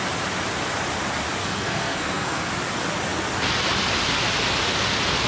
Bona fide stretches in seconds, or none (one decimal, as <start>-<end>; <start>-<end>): 0.0-1.4; 2.5-5.3